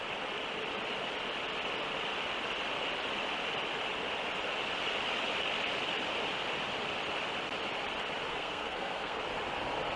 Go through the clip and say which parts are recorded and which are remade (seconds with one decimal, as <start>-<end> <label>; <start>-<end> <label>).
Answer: 0.0-8.3 recorded; 8.3-9.2 remade; 9.2-10.0 recorded